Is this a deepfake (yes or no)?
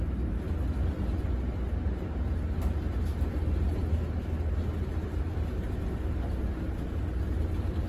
no